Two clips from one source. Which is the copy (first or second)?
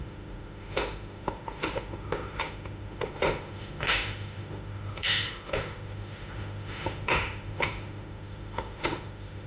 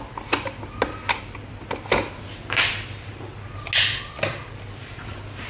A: first